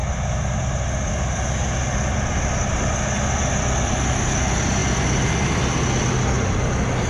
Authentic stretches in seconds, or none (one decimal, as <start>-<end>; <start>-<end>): 0.0-7.1